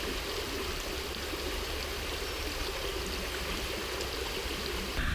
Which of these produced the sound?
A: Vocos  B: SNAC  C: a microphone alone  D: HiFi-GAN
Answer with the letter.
C